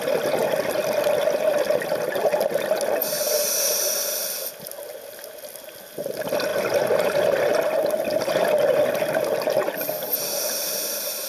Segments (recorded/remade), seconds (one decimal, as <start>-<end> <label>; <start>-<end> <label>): 0.0-11.3 recorded